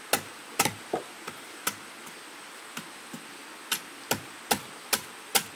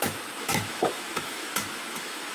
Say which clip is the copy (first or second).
second